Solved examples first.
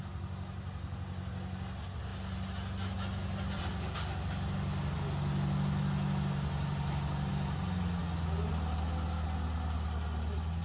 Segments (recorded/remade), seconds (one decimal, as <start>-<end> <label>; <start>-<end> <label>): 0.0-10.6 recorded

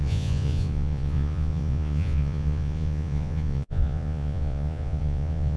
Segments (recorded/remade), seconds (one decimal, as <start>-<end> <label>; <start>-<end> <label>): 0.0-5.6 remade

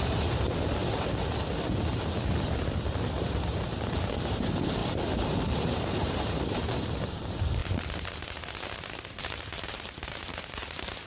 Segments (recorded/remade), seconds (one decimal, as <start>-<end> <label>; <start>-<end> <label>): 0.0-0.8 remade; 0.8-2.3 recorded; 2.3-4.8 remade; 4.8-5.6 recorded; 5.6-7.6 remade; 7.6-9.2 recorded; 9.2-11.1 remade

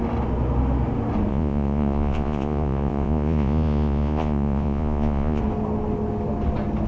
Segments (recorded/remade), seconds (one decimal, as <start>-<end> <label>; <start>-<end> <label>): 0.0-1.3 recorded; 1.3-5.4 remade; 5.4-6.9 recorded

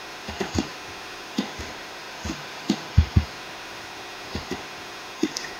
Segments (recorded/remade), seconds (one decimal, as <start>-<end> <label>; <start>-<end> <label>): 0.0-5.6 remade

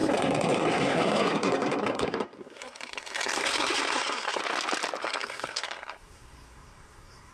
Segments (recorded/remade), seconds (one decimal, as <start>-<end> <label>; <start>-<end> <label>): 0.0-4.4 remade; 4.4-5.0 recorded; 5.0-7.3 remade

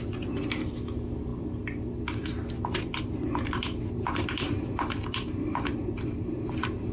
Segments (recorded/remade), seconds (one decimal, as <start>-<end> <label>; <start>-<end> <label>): 0.0-6.9 recorded